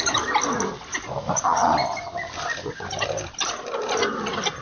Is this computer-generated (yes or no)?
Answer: no